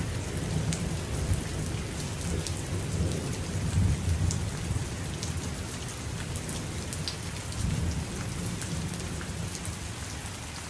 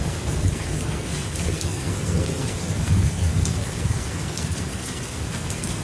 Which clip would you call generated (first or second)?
second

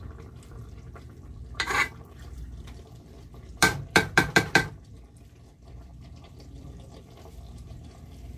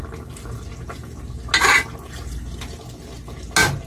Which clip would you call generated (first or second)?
first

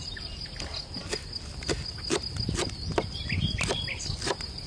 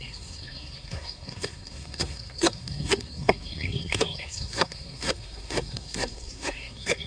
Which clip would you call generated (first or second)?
second